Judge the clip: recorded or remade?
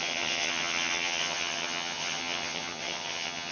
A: remade